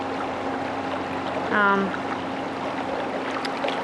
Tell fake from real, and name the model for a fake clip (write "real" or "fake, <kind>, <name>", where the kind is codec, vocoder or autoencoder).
real